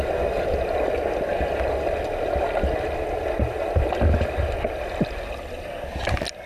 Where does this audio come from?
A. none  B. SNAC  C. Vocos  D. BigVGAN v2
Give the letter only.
A